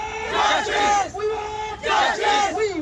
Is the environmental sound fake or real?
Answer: real